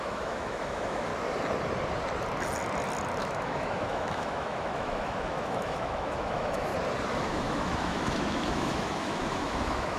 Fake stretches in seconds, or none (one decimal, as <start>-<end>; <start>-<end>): 0.0-1.1; 3.2-6.7; 7.2-10.0